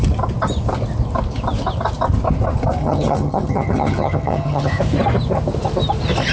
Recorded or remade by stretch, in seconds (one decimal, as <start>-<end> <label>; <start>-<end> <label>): 0.0-2.8 recorded; 2.8-4.8 remade; 4.8-6.3 recorded